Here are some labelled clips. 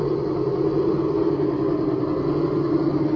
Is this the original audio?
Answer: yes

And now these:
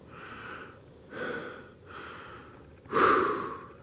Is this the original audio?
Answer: yes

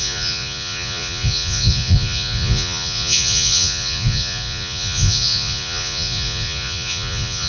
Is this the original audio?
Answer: no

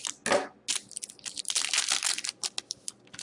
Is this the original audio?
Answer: yes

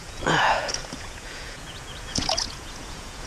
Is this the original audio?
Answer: no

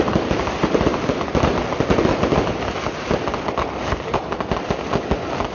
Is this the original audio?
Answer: yes